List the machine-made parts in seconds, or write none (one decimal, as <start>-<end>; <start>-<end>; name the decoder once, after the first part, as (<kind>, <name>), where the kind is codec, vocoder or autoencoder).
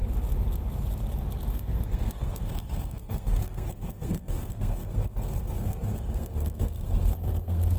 1.5-7.8 (codec, SNAC)